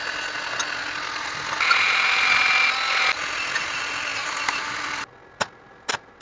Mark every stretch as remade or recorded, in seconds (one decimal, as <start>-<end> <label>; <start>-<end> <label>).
0.0-4.1 recorded; 4.1-4.8 remade; 4.8-6.2 recorded